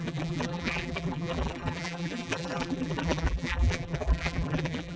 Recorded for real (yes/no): no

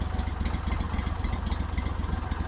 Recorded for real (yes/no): yes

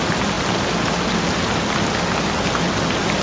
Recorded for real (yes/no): yes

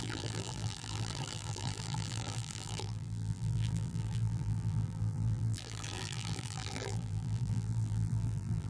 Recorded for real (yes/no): no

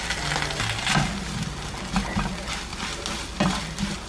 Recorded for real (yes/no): yes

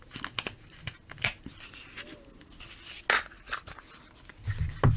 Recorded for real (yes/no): yes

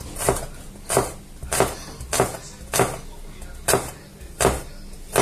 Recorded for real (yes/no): yes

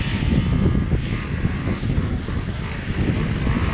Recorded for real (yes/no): yes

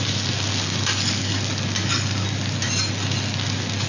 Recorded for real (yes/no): yes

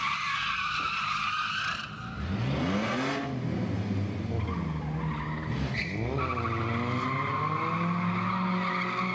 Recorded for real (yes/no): yes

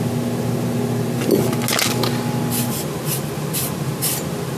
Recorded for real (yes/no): yes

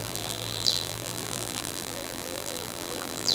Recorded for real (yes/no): no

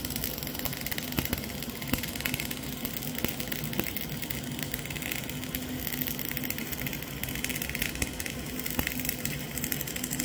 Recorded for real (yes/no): yes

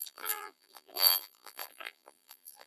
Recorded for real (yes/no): no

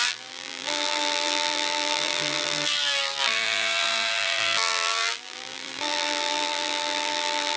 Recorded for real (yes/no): no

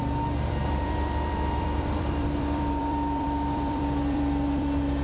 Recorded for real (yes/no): no